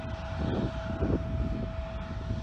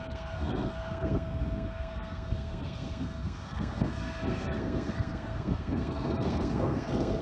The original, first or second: first